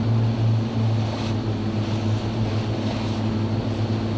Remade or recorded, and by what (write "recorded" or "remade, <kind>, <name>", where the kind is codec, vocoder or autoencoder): recorded